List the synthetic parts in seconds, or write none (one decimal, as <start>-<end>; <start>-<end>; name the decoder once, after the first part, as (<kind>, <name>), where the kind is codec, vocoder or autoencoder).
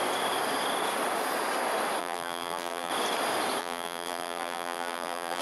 2.0-2.9 (vocoder, BigVGAN v2); 3.6-5.4